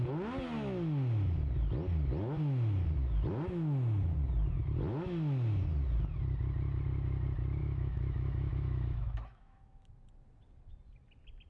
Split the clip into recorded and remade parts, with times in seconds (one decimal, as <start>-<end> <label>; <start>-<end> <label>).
0.0-7.6 recorded; 7.6-9.9 remade; 9.9-11.5 recorded

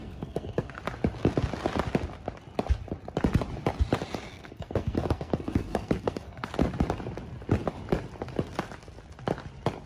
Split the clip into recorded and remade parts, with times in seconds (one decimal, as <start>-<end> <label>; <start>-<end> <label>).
0.0-0.8 remade; 0.8-4.3 recorded; 4.3-6.5 remade; 6.5-9.9 recorded